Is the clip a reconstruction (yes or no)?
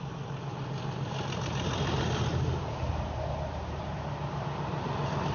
no